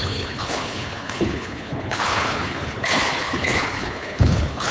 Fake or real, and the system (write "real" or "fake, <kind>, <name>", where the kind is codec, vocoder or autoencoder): fake, codec, HILCodec